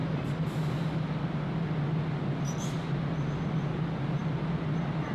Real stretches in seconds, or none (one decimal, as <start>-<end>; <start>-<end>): 0.0-5.1